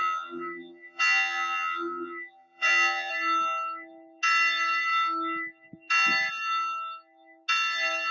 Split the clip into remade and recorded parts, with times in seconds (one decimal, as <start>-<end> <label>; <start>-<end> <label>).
0.0-3.1 remade; 3.1-8.1 recorded